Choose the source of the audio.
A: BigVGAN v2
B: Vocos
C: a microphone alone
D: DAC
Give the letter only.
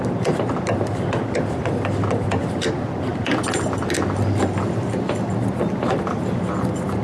A